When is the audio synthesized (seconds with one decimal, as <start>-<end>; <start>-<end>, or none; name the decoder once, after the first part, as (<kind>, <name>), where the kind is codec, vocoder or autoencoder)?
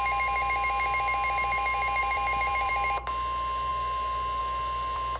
2.0-2.7 (vocoder, BigVGAN v2)